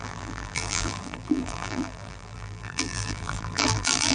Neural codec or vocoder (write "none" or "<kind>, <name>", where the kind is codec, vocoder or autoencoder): vocoder, BigVGAN v2